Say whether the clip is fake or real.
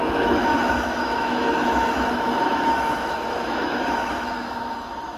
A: fake